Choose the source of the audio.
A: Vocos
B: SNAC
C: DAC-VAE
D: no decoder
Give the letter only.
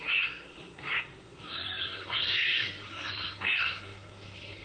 B